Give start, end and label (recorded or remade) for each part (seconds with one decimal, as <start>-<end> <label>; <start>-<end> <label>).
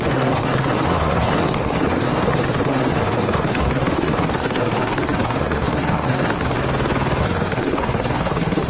0.0-6.6 remade; 6.6-7.2 recorded; 7.2-8.7 remade